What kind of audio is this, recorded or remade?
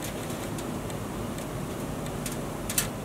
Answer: recorded